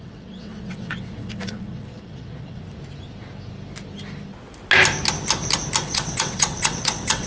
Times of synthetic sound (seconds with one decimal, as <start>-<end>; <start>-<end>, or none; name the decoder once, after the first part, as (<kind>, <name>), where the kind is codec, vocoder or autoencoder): 0.0-2.6 (vocoder, WaveNeXt); 5.8-7.3